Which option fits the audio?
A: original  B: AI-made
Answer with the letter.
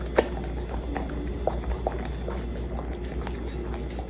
A